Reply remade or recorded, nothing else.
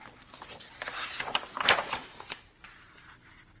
remade